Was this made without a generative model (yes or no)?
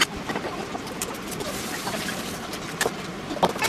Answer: no